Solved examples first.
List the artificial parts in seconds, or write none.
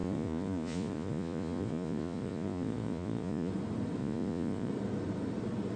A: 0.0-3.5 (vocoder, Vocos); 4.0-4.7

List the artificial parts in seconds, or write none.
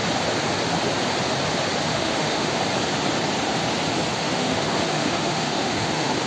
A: 1.9-2.6 (autoencoder, DAC-VAE); 4.2-6.3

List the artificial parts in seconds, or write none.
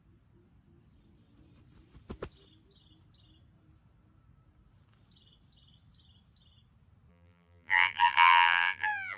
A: 7.1-9.2 (vocoder, BigVGAN v2)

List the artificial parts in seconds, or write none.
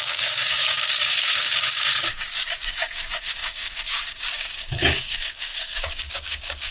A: 0.0-6.7 (codec, DAC)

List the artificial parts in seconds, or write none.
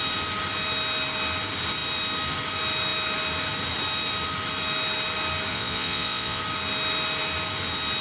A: 5.5-6.4 (vocoder, Vocos)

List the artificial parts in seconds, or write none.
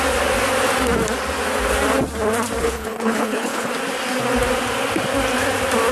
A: 2.6-3.7 (codec, HILCodec)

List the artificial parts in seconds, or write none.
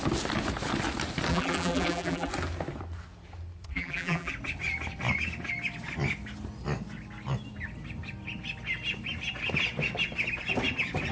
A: 1.3-2.3 (vocoder, BigVGAN v2); 3.7-4.3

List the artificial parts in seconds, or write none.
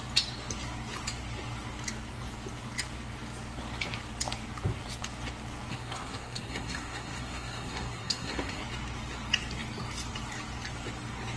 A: 5.7-8.6 (codec, SNAC)